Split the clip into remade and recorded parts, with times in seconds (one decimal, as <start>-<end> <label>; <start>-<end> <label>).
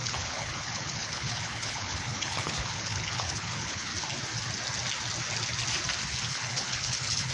0.0-3.9 remade; 3.9-6.3 recorded; 6.3-7.3 remade